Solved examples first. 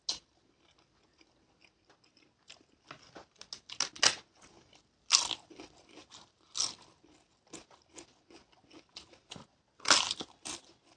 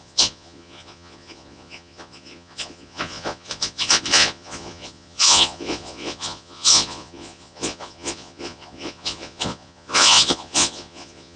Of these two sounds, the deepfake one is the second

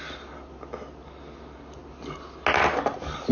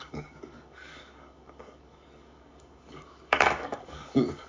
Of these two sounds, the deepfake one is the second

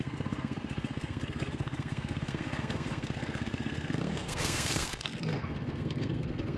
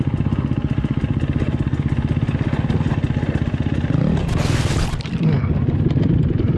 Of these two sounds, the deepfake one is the first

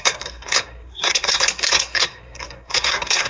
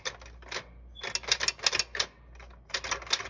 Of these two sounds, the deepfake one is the first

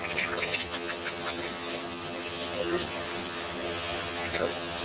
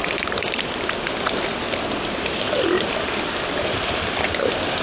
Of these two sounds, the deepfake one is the first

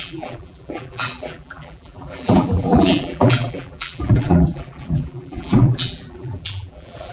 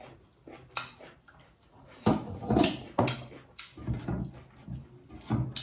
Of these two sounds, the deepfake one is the first